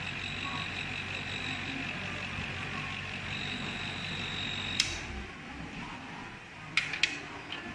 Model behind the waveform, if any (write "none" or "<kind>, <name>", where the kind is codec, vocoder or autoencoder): none